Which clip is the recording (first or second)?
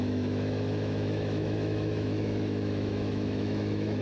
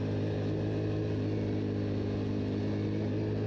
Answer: second